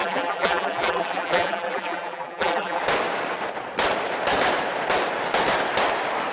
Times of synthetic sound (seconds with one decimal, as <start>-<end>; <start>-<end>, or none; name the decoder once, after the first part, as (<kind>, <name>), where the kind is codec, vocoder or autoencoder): 0.0-2.8 (vocoder, BigVGAN v2)